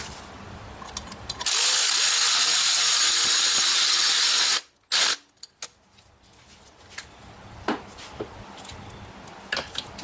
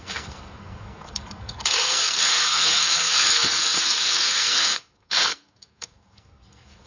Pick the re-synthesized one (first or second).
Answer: second